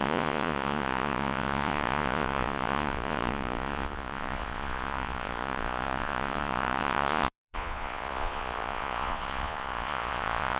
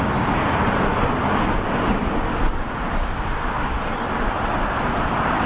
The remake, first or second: first